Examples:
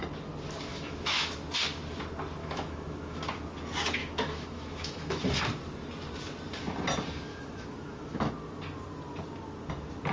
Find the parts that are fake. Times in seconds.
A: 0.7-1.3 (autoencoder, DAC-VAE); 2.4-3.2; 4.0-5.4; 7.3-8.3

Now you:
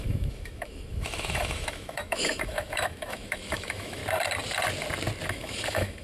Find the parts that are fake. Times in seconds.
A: 0.0-4.0 (autoencoder, DAC-VAE); 5.3-6.0

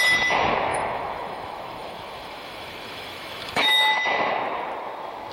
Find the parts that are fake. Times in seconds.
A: 0.7-3.9 (autoencoder, DAC-VAE)

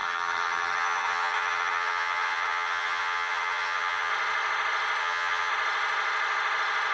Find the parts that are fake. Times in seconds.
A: 0.0-4.1 (vocoder, HiFi-GAN); 5.0-5.5

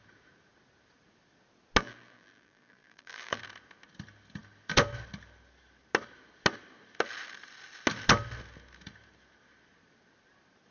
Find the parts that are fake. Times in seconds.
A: 1.8-3.4 (vocoder, BigVGAN v2)